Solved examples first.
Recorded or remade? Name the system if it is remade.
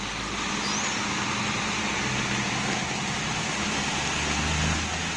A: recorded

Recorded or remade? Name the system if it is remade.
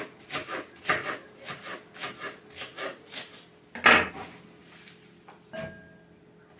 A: recorded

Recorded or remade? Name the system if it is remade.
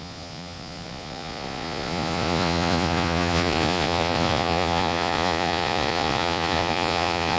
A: remade, vocoder, Vocos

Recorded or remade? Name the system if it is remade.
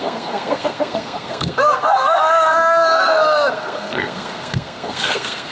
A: remade, codec, SNAC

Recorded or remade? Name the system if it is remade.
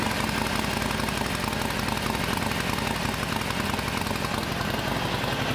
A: recorded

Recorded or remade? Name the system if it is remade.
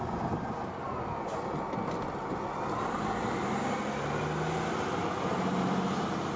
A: recorded